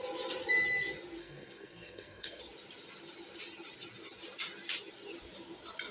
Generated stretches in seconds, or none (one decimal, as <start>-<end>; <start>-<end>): 1.2-2.4